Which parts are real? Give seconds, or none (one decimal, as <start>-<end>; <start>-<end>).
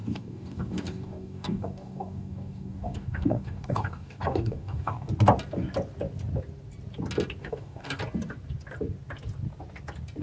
5.1-7.4; 8.0-10.2